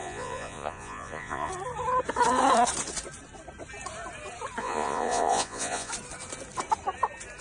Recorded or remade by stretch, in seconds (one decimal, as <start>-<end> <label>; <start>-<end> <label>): 0.0-1.5 remade; 1.5-4.6 recorded; 4.6-5.9 remade; 5.9-7.4 recorded